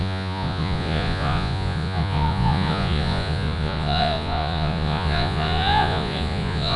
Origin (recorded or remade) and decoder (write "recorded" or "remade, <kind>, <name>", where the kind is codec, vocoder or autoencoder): remade, vocoder, Vocos